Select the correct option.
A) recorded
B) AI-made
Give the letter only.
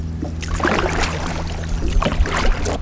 A